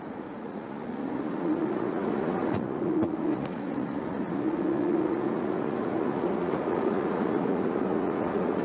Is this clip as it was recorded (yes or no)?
no